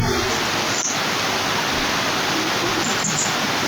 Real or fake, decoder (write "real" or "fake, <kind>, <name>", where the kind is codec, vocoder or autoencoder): real